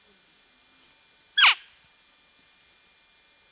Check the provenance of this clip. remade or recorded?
recorded